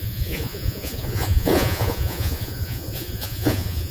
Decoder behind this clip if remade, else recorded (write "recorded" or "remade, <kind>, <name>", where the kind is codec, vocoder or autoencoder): remade, vocoder, Vocos